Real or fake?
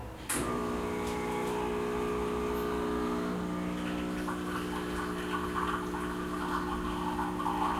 real